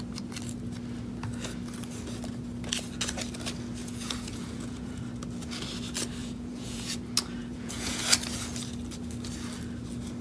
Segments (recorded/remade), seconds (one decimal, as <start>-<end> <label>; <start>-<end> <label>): 0.0-3.8 recorded; 3.8-5.0 remade; 5.0-6.2 recorded; 6.2-7.0 remade; 7.0-7.4 recorded; 7.4-8.0 remade; 8.0-10.2 recorded